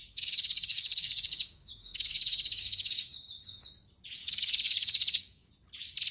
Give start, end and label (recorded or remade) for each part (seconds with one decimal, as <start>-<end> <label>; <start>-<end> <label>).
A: 0.0-3.7 remade; 3.7-4.2 recorded; 4.2-5.5 remade; 5.5-6.1 recorded